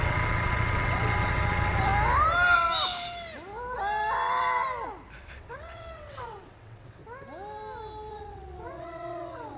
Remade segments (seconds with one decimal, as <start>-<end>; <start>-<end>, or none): 0.0-1.9; 5.2-7.0; 8.1-9.6